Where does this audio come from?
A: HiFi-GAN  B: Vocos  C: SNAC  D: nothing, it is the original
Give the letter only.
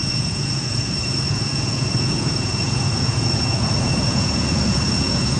B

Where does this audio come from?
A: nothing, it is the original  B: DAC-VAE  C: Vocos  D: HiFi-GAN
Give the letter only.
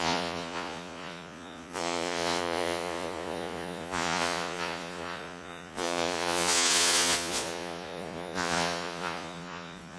C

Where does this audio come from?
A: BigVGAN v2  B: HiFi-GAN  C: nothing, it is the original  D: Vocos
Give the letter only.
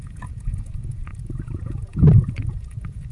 D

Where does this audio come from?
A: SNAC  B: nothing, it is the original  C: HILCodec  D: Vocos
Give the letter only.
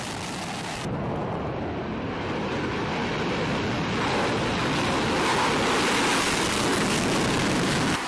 B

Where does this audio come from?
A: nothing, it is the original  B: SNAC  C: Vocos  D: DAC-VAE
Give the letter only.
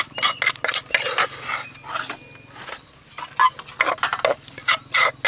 A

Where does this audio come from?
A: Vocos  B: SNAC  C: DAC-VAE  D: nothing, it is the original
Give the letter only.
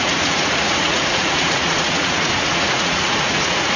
A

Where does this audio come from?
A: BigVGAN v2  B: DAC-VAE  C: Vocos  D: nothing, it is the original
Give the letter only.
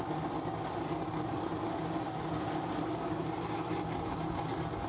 D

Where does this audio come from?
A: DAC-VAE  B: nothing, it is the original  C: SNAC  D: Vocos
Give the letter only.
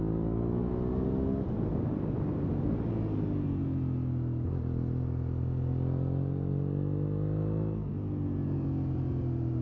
B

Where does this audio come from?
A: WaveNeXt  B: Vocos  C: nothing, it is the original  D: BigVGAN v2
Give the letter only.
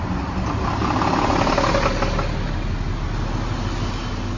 C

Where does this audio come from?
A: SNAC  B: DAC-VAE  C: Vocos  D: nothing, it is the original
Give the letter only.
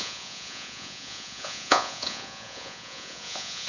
C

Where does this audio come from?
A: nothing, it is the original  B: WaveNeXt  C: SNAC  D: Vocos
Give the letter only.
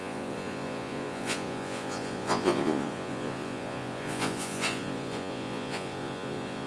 D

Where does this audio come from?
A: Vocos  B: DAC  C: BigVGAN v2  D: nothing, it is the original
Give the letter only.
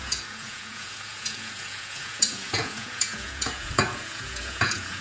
A